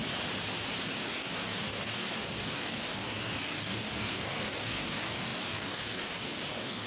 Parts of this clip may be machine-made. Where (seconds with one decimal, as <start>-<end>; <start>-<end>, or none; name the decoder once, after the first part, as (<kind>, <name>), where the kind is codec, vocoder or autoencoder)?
0.9-6.9 (codec, DAC)